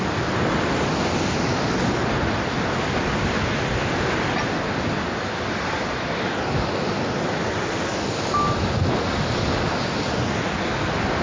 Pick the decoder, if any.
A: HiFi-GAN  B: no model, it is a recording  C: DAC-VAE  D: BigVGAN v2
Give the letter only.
B